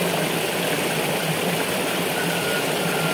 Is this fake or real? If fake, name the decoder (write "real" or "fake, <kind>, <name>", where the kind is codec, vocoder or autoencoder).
real